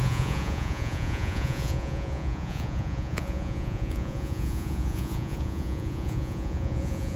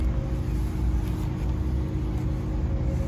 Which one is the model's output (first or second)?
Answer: first